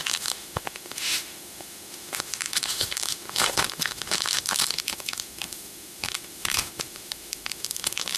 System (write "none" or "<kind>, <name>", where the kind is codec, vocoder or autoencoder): autoencoder, DAC-VAE